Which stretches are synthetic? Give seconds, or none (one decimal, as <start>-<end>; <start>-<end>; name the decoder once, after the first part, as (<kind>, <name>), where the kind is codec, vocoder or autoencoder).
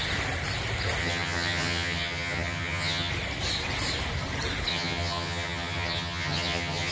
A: 1.0-3.1 (vocoder, HiFi-GAN); 4.7-6.9